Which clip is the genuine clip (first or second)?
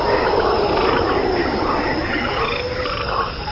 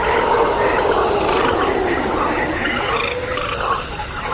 second